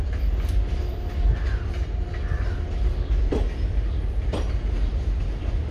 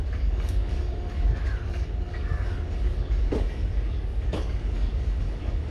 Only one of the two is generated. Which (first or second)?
second